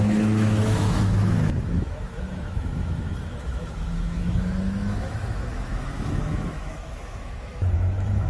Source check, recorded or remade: remade